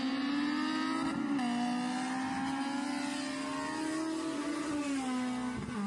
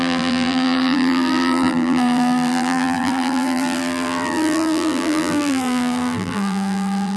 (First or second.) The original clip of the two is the first